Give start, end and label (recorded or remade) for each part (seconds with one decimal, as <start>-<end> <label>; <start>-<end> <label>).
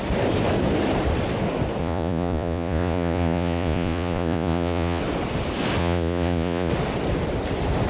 0.0-1.8 recorded; 1.8-5.0 remade; 5.0-5.8 recorded; 5.8-6.7 remade; 6.7-7.9 recorded